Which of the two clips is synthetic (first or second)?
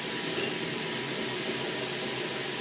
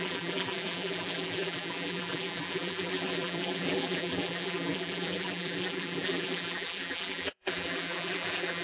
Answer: second